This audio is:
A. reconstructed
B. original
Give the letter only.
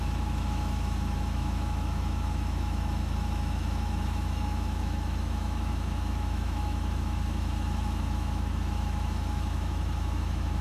A